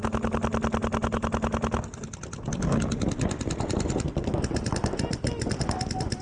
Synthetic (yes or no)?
no